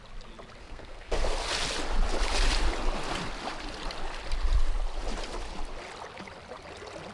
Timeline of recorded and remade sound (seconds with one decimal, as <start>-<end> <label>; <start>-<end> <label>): 0.0-0.6 recorded; 0.6-1.2 remade; 1.2-7.1 recorded